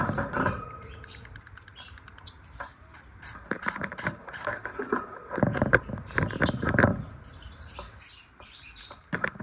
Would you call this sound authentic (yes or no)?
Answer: no